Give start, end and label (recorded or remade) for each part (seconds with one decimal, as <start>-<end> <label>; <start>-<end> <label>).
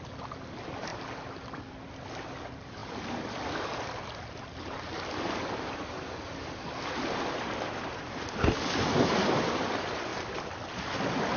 0.0-11.4 recorded